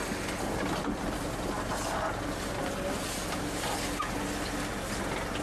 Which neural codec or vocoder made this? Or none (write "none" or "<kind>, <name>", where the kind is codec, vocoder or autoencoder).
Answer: none